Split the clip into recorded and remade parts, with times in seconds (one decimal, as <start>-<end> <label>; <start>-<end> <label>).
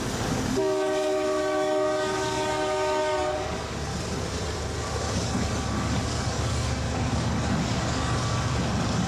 0.0-3.9 remade; 3.9-5.0 recorded; 5.0-9.1 remade